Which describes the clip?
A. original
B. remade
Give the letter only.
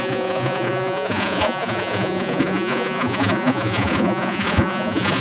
B